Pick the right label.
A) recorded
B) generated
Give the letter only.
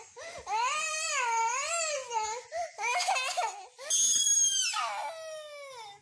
A